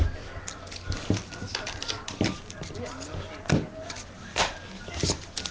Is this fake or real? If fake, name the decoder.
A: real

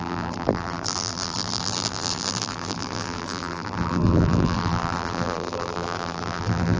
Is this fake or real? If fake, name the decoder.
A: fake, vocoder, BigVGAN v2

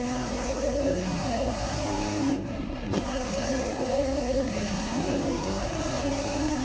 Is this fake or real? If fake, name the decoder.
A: fake, codec, SNAC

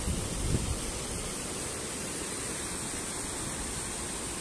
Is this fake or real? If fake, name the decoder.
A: real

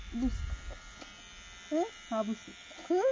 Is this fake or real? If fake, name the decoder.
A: real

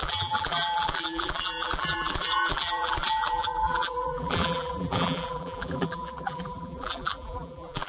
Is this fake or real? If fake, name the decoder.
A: fake, vocoder, BigVGAN v2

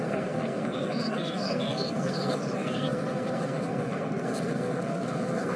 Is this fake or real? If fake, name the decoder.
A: fake, codec, SNAC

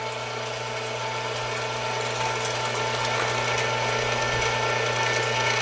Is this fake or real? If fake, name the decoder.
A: real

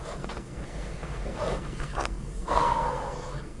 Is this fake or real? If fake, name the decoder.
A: fake, codec, SNAC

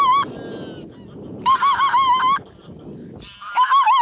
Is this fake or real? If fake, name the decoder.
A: real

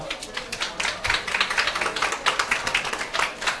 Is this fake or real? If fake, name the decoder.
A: real